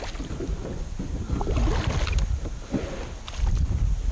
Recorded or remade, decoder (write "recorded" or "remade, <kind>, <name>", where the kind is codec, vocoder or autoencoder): recorded